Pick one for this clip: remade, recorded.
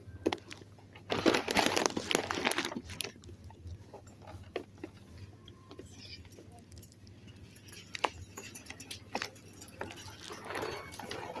recorded